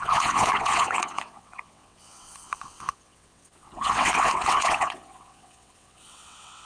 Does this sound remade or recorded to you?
remade